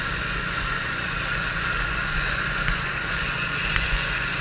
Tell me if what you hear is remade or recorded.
remade